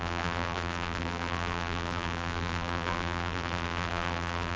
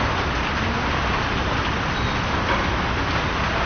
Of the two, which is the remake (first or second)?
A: first